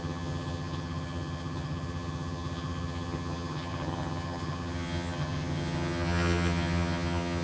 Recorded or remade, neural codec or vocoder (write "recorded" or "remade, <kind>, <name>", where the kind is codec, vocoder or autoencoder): remade, vocoder, HiFi-GAN